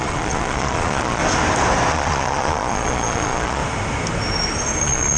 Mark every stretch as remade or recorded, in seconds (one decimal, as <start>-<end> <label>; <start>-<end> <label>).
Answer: 0.0-1.2 remade; 1.2-1.9 recorded; 1.9-3.6 remade; 3.6-4.8 recorded; 4.8-5.2 remade